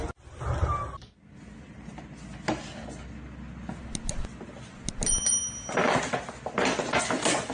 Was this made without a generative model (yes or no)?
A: yes